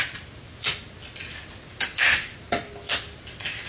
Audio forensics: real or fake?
real